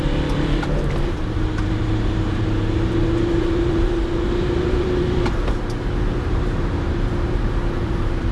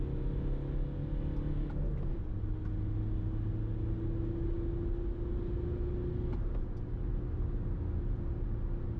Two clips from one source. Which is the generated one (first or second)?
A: first